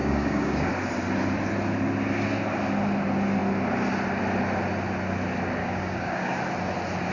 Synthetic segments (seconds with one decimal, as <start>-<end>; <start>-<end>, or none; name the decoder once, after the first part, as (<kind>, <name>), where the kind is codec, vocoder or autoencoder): 0.0-0.7 (codec, DAC); 5.6-6.4